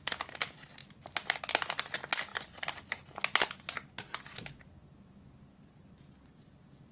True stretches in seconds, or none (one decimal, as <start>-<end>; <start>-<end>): 0.0-0.8; 1.4-6.9